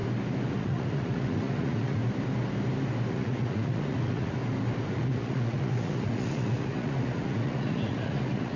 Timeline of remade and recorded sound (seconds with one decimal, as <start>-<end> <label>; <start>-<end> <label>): 0.0-0.5 recorded; 0.5-2.0 remade; 2.0-3.1 recorded; 3.1-4.4 remade; 4.4-4.9 recorded; 4.9-8.6 remade